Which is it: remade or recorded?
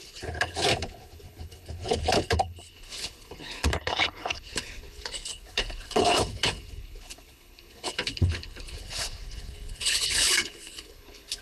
remade